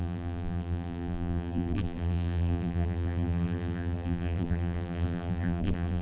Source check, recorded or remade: remade